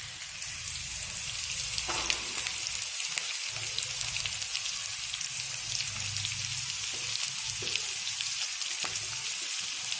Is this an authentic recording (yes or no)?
yes